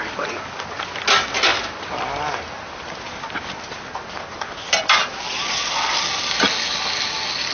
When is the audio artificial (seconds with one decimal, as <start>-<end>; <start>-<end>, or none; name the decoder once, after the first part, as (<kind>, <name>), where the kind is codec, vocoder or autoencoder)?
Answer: none